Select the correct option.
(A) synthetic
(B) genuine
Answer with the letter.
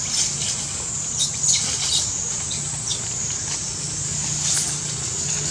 B